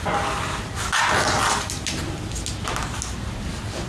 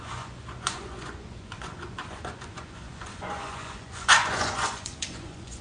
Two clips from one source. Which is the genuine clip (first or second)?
first